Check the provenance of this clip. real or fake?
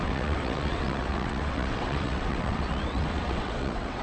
fake